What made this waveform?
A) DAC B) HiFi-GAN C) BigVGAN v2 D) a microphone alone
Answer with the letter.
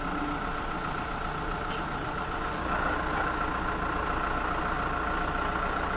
D